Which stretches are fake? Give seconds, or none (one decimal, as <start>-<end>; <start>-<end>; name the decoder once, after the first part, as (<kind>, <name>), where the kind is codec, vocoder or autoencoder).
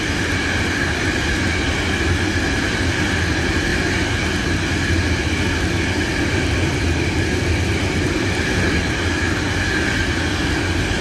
none